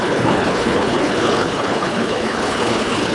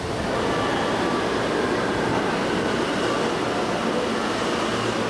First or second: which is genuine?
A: second